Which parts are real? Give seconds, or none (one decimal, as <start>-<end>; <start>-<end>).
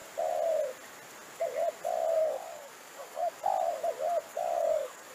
0.0-2.2; 3.3-4.3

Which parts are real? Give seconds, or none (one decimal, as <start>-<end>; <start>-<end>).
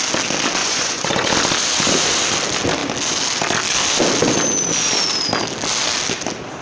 0.0-0.6; 1.3-6.6